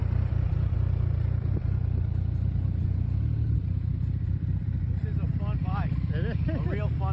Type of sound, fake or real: real